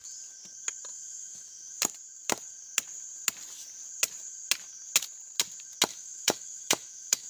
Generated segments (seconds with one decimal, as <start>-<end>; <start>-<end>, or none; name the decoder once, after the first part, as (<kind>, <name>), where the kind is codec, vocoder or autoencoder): 0.9-1.8 (autoencoder, DAC-VAE); 5.9-7.3